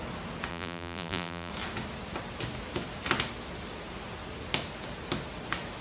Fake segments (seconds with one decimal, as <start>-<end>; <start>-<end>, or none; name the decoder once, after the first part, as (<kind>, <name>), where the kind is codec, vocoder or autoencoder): 0.5-1.5 (vocoder, BigVGAN v2)